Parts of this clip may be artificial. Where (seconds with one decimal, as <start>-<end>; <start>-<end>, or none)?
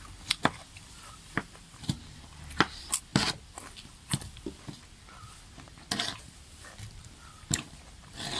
0.0-8.4